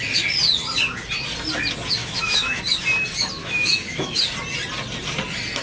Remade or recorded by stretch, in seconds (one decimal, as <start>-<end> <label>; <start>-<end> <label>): 0.0-2.0 recorded; 2.0-2.6 remade; 2.6-3.4 recorded; 3.4-4.2 remade; 4.2-5.6 recorded